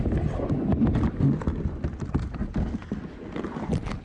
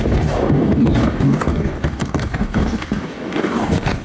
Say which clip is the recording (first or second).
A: first